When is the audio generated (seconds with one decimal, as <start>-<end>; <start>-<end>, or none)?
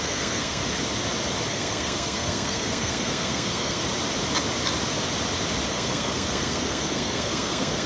0.0-0.6; 1.5-3.8; 5.7-7.9